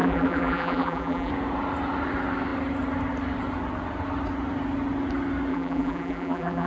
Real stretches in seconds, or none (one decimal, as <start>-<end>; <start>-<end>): 1.3-5.5